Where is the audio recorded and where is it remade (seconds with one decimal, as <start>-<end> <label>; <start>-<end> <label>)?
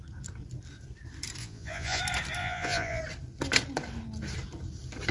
0.0-1.4 recorded; 1.4-2.0 remade; 2.0-2.4 recorded; 2.4-3.0 remade; 3.0-5.1 recorded